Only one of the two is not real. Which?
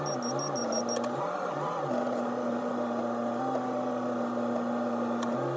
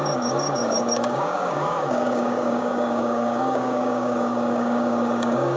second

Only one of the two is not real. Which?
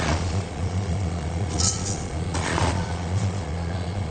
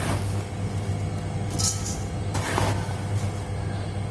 first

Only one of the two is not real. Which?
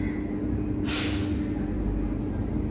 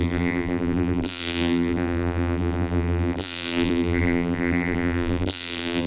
second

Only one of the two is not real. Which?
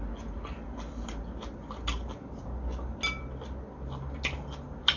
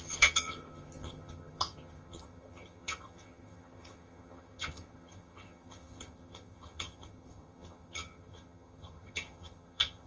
second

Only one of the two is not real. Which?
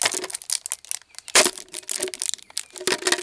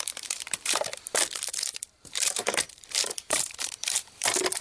second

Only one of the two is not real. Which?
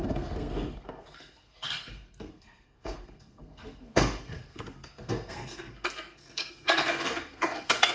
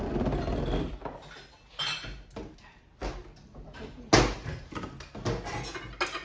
first